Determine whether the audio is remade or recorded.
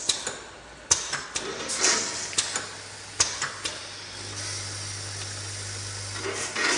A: recorded